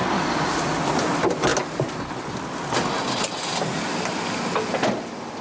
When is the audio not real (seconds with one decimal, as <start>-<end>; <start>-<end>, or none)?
0.0-1.5; 4.7-5.4